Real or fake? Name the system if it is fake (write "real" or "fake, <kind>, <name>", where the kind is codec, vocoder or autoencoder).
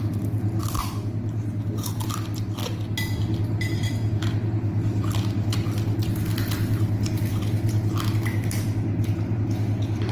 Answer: real